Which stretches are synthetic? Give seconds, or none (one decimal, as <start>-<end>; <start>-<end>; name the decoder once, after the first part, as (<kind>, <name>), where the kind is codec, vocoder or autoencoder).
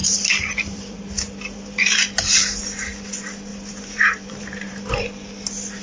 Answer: 0.0-2.6 (vocoder, BigVGAN v2); 3.5-4.8